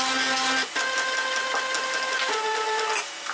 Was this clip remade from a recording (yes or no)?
no